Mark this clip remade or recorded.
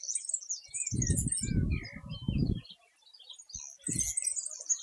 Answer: recorded